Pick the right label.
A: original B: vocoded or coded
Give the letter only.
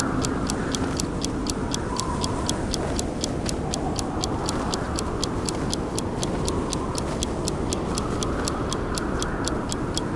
A